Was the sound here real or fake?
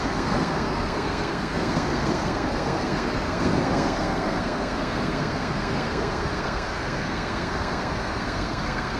fake